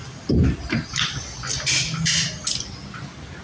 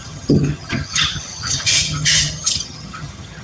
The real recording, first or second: first